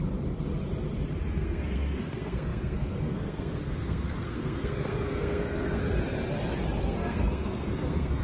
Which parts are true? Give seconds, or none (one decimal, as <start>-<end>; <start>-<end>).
0.0-1.3; 5.8-6.8